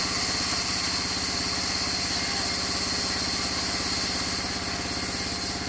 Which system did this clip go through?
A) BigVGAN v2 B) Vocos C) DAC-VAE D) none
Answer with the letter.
D